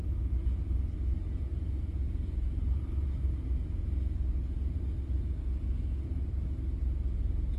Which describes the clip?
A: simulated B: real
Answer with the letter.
B